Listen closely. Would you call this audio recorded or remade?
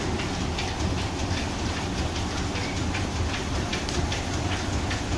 recorded